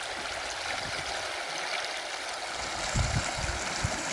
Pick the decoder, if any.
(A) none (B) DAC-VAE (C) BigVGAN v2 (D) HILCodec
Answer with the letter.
A